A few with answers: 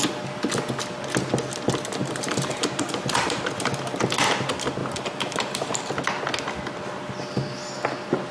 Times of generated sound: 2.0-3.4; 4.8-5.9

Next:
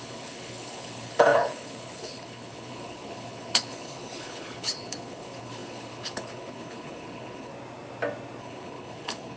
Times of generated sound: 0.0-7.5; 8.4-9.4

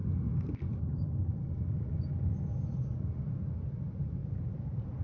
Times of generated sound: 4.2-5.0

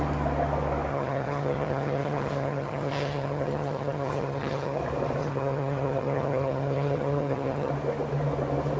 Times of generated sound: 0.9-4.8; 5.2-7.7

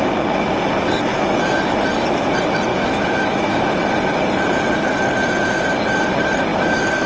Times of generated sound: 1.1-1.6; 2.7-3.6